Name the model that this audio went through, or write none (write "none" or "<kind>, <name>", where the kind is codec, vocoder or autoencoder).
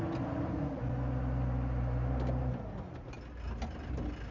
none